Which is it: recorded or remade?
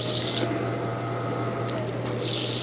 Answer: recorded